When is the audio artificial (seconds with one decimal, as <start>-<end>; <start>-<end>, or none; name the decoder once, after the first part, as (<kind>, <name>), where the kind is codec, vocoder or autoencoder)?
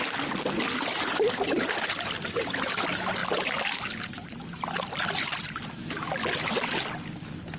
none